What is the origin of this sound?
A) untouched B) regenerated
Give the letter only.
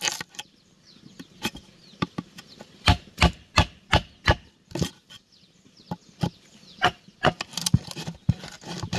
A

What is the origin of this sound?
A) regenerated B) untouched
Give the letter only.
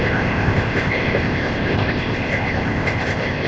A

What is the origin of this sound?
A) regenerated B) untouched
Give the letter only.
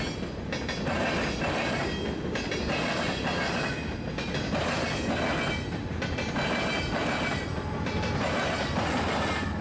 B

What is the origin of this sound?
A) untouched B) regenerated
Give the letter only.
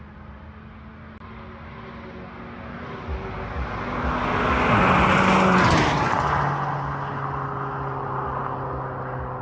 A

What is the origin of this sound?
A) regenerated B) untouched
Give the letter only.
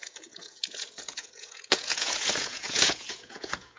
A